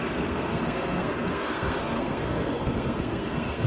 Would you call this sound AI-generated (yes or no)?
yes